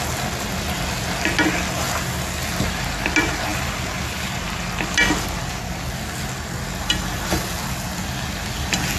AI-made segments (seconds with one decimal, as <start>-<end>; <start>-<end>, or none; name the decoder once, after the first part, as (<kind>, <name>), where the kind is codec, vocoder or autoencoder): none

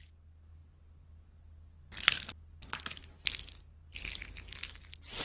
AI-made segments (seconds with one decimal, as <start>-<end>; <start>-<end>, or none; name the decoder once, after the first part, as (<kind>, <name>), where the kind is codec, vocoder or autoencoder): none

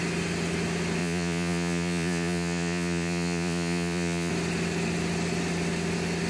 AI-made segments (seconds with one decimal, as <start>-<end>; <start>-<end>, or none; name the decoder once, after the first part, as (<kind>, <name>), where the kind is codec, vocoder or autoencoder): 1.0-4.3 (vocoder, Vocos)

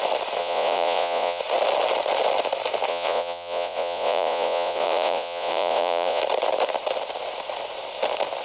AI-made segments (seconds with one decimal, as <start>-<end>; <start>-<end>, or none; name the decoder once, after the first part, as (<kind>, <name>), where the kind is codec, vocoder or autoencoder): 0.4-1.4 (vocoder, Vocos); 2.9-6.2